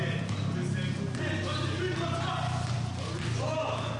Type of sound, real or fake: real